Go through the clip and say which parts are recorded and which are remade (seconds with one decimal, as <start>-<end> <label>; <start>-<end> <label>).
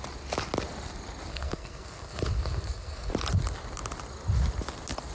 0.0-1.3 recorded; 1.3-3.1 remade; 3.1-5.1 recorded